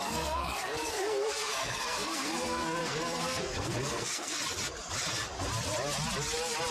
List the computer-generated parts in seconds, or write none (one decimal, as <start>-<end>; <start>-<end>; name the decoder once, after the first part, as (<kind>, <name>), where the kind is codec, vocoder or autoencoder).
0.0-4.4 (codec, SNAC)